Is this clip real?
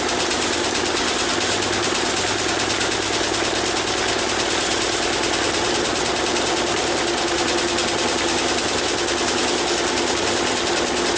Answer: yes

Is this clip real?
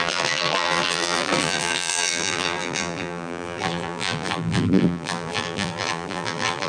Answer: no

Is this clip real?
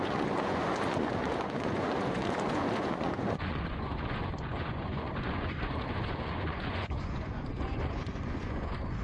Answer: no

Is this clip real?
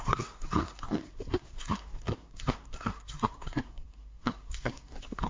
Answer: no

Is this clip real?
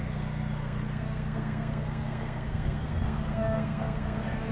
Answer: no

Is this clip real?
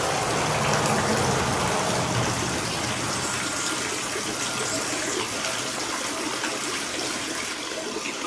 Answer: yes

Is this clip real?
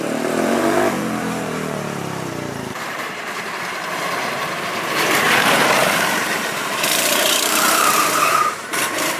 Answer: no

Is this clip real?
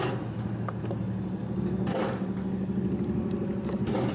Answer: yes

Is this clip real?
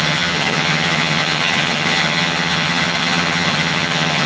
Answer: no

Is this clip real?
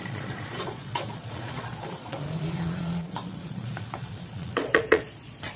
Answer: no